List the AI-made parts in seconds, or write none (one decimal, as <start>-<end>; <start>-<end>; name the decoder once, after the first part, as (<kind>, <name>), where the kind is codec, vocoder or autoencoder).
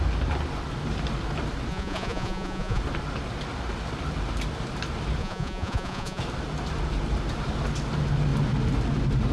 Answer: 1.7-2.8 (vocoder, Vocos); 5.2-6.2